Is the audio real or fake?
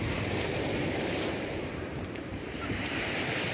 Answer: fake